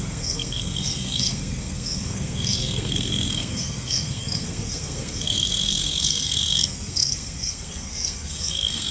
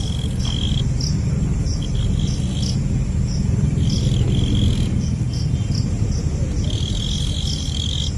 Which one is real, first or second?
second